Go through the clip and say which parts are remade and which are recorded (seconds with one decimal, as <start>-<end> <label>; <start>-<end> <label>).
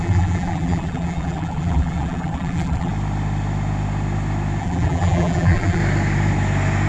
0.0-2.9 remade; 2.9-4.6 recorded; 4.6-5.8 remade; 5.8-6.9 recorded